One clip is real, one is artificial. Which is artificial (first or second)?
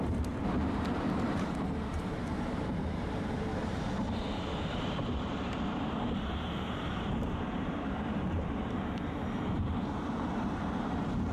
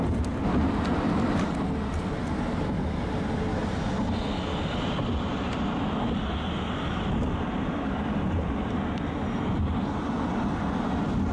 first